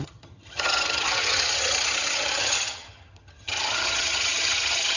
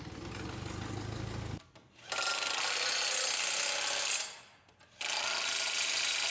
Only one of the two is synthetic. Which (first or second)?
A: first